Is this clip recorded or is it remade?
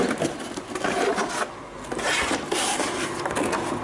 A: recorded